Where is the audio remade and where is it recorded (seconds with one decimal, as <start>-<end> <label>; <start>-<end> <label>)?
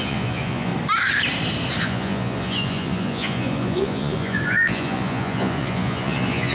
0.0-0.7 remade; 0.7-1.8 recorded; 1.8-6.5 remade